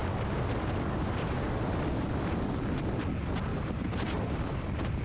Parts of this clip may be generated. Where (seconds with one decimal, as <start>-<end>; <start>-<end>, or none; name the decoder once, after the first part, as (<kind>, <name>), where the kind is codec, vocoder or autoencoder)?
3.5-5.0 (vocoder, BigVGAN v2)

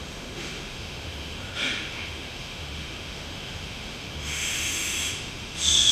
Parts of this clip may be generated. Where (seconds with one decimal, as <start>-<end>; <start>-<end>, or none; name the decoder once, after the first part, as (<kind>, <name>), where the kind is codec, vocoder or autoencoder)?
0.0-5.9 (autoencoder, DAC-VAE)

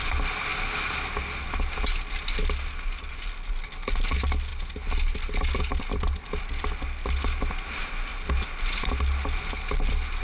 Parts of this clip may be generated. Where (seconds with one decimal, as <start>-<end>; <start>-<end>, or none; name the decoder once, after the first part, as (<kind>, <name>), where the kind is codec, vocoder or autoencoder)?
none

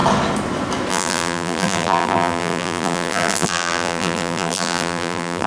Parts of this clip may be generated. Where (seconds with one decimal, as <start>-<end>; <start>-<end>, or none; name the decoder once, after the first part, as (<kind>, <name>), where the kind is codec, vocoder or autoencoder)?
0.9-5.5 (vocoder, BigVGAN v2)

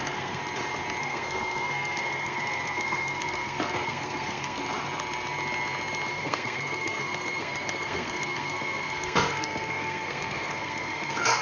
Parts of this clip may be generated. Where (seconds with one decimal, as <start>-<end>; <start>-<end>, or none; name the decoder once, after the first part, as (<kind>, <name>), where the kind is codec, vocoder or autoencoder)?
0.0-0.4 (codec, SNAC); 1.0-4.6; 6.1-11.4

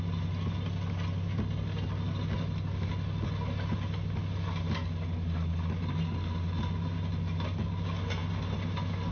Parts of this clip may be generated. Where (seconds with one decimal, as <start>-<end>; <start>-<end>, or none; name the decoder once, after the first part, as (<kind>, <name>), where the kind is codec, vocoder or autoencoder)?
none

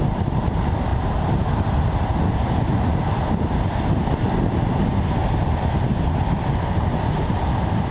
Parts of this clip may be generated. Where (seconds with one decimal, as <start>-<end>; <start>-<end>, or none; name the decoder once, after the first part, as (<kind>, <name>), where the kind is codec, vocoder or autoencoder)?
none